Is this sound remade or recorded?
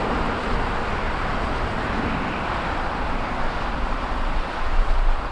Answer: recorded